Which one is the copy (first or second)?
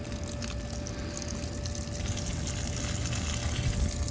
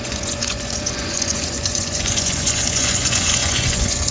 second